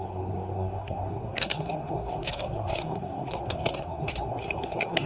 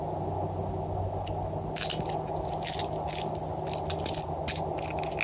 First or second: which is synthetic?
first